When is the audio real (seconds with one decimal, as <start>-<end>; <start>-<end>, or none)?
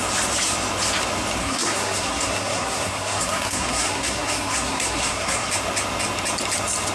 0.0-1.4; 5.5-6.9